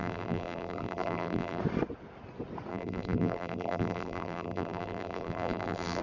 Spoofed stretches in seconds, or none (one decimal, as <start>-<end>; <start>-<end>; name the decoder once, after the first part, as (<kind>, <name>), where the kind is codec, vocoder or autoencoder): 0.0-1.6 (vocoder, BigVGAN v2); 2.7-6.0